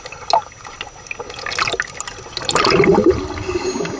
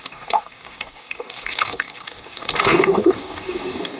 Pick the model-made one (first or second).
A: second